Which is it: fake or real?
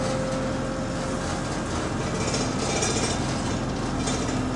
real